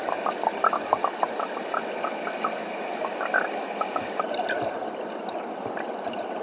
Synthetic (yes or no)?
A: no